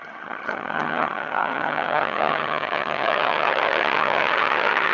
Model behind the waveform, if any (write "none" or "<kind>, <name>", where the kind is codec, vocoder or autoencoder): vocoder, HiFi-GAN